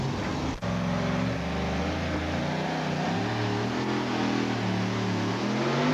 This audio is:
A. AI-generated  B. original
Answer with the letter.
B